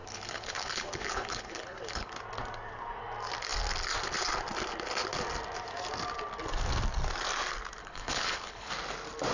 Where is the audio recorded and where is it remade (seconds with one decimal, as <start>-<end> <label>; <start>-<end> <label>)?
0.0-2.1 remade; 2.1-7.8 recorded; 7.8-8.7 remade; 8.7-9.3 recorded